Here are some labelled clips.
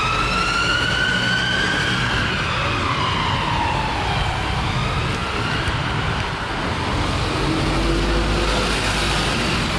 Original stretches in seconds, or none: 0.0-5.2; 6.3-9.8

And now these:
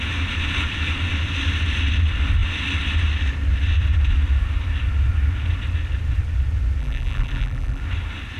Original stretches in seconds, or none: 0.0-6.8; 7.8-8.4

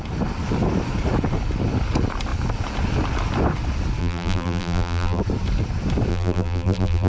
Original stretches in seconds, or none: 0.0-4.0; 5.2-6.1

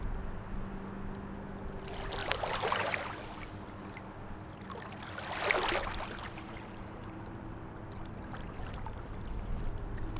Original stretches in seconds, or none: 0.0-2.2; 2.9-6.2; 7.6-8.4; 9.6-10.2

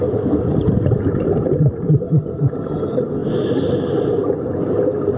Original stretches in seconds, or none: 2.5-5.2